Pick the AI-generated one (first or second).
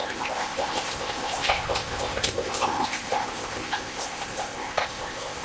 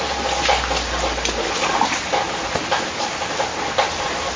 first